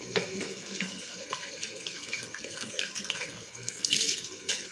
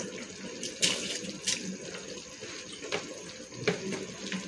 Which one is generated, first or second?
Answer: first